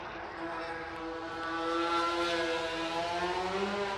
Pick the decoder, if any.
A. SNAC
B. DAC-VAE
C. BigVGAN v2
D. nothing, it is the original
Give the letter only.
D